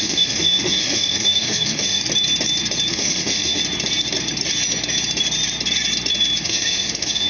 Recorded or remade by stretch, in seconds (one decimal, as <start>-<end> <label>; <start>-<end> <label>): 0.0-2.0 remade; 2.0-2.9 recorded; 2.9-3.6 remade; 3.6-6.4 recorded; 6.4-7.3 remade